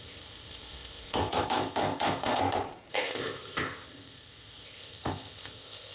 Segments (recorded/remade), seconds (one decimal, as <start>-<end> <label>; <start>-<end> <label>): 0.0-2.4 remade; 2.4-2.9 recorded; 2.9-5.9 remade